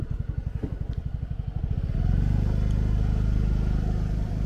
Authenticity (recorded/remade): recorded